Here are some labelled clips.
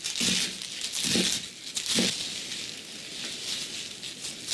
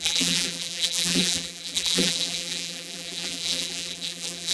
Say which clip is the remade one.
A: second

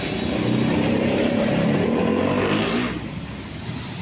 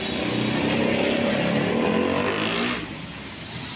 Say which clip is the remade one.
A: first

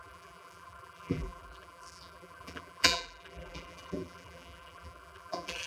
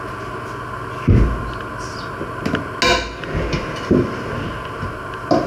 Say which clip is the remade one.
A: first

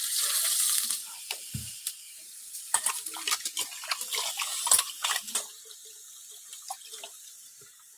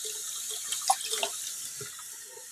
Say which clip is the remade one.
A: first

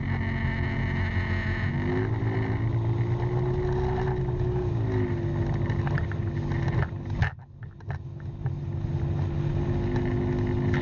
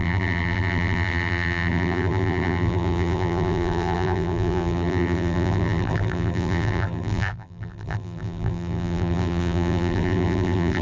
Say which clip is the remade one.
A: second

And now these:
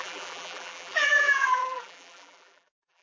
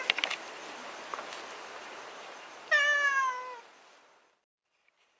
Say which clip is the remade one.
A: first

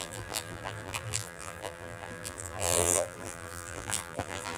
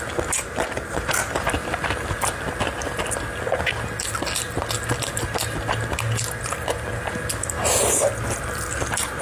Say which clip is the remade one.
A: first